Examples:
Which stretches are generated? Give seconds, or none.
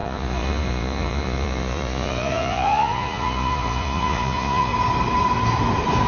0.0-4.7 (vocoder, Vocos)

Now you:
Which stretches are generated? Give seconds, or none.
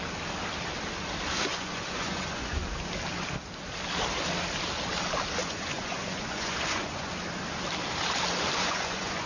1.5-2.7 (vocoder, Vocos); 5.4-7.1; 8.6-9.3